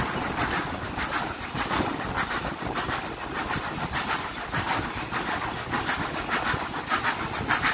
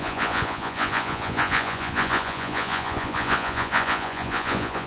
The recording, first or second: first